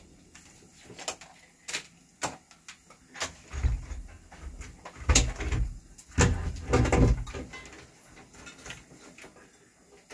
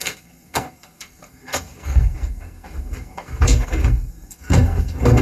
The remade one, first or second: second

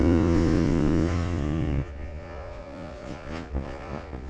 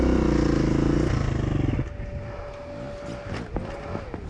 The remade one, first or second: first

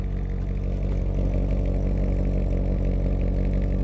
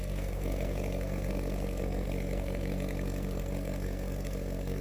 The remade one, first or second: second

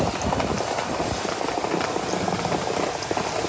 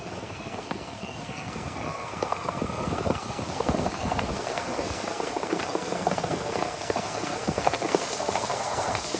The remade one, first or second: second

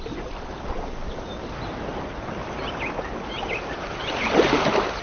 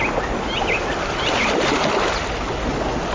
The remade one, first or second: first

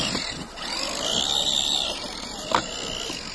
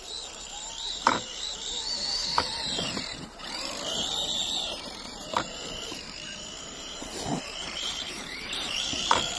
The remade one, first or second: second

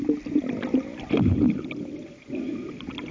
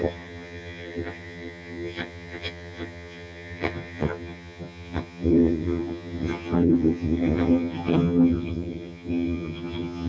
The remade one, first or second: second